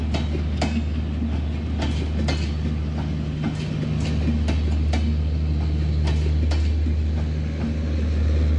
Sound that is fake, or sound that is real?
real